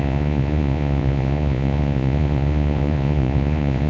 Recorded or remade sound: remade